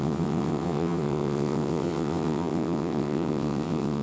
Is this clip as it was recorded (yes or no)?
no